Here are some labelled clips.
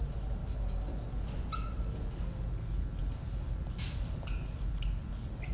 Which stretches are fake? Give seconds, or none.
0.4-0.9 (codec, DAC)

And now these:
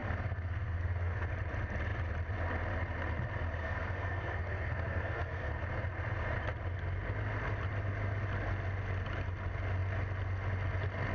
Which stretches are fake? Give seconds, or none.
0.0-1.3 (codec, SNAC); 3.6-5.5

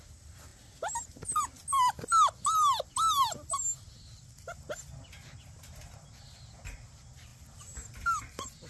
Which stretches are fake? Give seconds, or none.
none

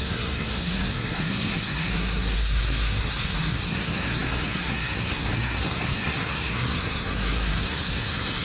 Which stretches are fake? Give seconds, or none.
0.0-8.4 (codec, SNAC)